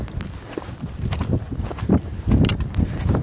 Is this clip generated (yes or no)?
no